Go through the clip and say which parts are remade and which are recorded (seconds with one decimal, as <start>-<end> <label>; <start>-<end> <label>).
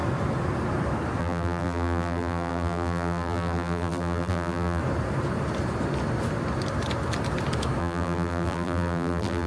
0.0-1.2 recorded; 1.2-4.8 remade; 4.8-7.8 recorded; 7.8-9.5 remade